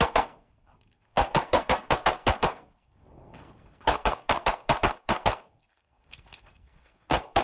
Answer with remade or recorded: remade